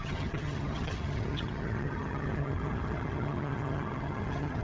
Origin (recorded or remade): remade